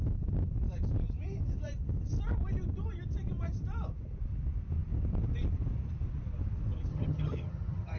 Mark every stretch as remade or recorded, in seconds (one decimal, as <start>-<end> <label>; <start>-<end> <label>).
0.0-6.9 recorded; 6.9-8.0 remade